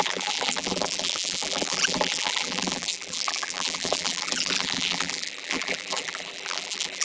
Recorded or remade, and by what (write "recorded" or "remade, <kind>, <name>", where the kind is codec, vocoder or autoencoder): remade, vocoder, BigVGAN v2